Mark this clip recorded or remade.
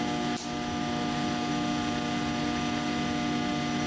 recorded